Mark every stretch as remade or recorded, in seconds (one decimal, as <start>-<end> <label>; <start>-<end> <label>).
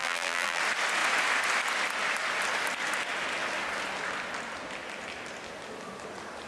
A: 0.0-0.6 remade; 0.6-6.5 recorded